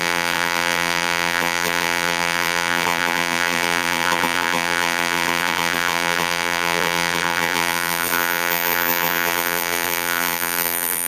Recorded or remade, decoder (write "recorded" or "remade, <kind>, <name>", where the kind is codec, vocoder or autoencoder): remade, vocoder, BigVGAN v2